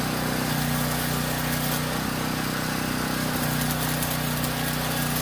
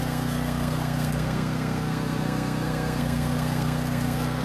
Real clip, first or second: first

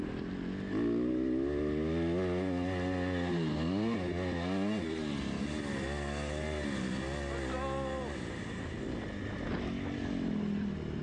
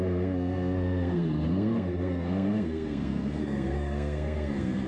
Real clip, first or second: first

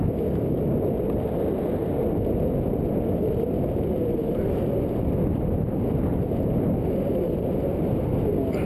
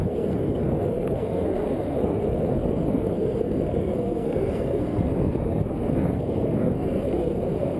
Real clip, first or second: first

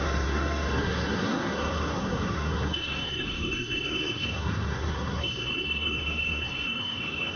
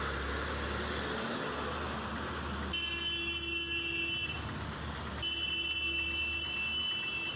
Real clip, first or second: second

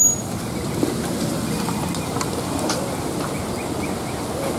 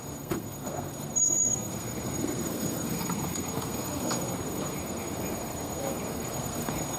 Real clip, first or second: first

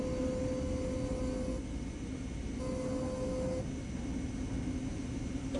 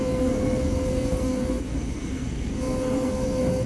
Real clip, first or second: first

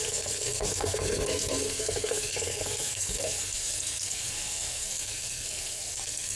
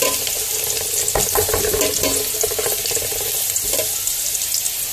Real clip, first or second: second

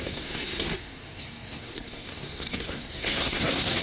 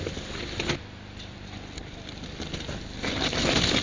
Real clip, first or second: second